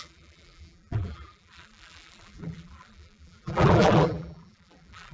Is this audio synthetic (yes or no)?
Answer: yes